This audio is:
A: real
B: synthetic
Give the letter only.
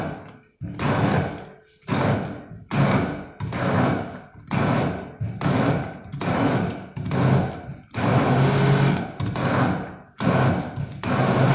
A